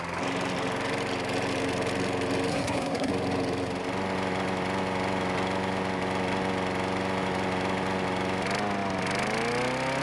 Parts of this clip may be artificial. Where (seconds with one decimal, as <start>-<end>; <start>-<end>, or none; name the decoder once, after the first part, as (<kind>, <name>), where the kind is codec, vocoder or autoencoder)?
2.5-3.1 (codec, SNAC)

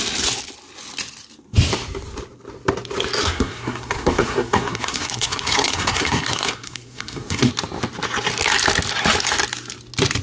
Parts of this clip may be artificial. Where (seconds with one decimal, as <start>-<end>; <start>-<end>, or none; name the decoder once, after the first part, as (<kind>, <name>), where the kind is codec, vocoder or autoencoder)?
3.2-7.5 (codec, SNAC)

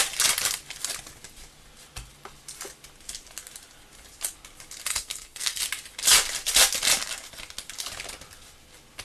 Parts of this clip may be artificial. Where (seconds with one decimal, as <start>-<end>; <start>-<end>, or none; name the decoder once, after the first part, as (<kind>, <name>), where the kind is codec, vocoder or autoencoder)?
4.9-5.6 (codec, SNAC)

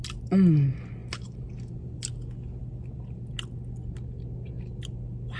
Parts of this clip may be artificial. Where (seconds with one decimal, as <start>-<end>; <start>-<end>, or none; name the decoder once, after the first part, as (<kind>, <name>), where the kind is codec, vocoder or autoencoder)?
none

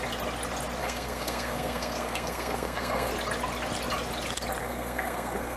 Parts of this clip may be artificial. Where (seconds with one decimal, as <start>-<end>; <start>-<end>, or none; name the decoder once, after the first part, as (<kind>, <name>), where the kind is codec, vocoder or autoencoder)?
0.8-3.1 (codec, SNAC); 4.6-5.6

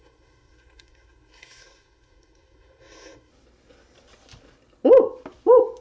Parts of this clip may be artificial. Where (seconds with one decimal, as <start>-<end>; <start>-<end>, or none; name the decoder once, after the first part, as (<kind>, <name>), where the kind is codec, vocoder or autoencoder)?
0.0-3.3 (codec, SNAC)